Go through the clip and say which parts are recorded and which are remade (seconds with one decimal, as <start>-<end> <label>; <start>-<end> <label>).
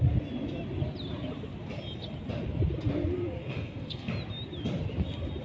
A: 0.0-3.4 recorded; 3.4-4.1 remade; 4.1-5.4 recorded